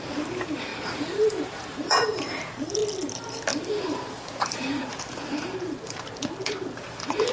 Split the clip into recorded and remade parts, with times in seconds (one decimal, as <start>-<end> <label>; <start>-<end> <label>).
0.0-2.8 remade; 2.8-3.7 recorded; 3.7-7.3 remade